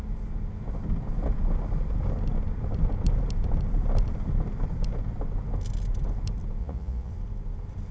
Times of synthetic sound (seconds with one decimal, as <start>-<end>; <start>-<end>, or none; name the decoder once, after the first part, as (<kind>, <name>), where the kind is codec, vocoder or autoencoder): 6.6-7.1 (vocoder, Vocos)

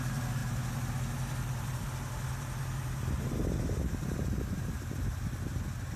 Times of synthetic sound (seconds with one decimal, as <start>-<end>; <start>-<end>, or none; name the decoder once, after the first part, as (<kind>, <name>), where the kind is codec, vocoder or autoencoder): none

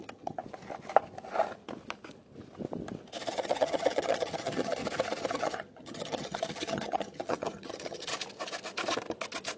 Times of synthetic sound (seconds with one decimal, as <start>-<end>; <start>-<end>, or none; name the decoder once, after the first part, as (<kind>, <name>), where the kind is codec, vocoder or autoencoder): 0.0-0.4 (vocoder, HiFi-GAN); 3.3-4.8; 5.3-8.1

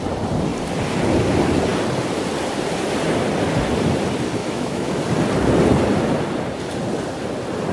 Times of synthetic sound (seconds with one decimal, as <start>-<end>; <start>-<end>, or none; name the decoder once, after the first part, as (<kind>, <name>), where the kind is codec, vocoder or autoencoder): 4.4-5.0 (autoencoder, DAC-VAE)

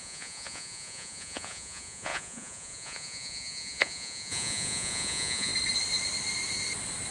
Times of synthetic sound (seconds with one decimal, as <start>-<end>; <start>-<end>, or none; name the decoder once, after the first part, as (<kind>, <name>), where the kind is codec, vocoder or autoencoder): 0.0-5.5 (vocoder, Vocos)

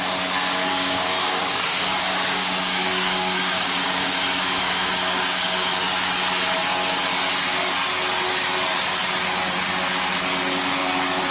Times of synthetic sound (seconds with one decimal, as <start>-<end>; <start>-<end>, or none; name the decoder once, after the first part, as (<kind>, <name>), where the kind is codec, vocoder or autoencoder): 0.7-5.7 (codec, DAC)